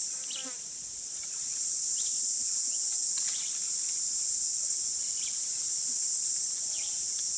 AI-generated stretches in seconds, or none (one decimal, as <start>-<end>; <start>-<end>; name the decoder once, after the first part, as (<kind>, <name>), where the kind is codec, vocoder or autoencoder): 2.4-3.0 (vocoder, Vocos); 6.7-7.4